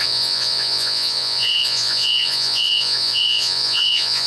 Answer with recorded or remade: remade